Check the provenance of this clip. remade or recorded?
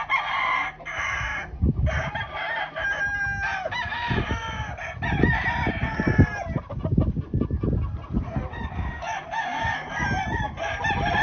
recorded